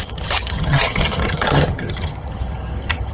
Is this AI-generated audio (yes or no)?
yes